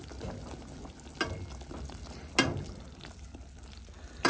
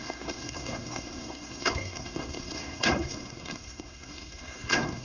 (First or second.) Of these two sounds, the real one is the first